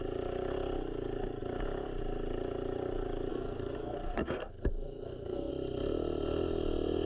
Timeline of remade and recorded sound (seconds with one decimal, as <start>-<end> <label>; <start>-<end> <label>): 0.0-3.3 recorded; 3.3-5.5 remade; 5.5-7.1 recorded